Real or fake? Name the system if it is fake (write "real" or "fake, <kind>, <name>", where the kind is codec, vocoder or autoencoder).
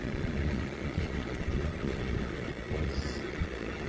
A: fake, vocoder, Vocos